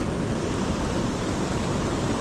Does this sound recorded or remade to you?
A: recorded